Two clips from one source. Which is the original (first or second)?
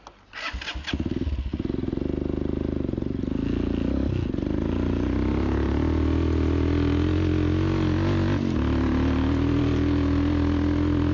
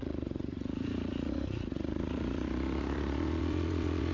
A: first